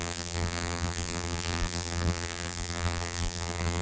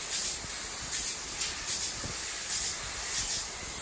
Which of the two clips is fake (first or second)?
first